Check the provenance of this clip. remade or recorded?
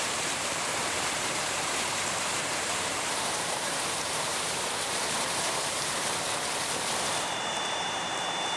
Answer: remade